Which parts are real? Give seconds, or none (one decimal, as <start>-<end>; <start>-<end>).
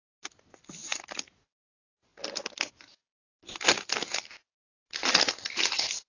0.0-6.1